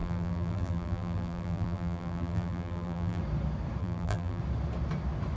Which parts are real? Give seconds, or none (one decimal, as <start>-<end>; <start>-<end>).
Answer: 3.2-3.8; 4.4-5.4